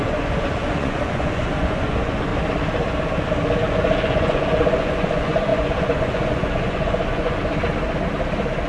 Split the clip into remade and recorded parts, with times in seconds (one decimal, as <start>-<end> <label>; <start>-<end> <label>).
0.0-2.3 remade; 2.3-3.7 recorded; 3.7-7.4 remade; 7.4-8.7 recorded